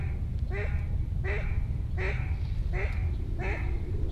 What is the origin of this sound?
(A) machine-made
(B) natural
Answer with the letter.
B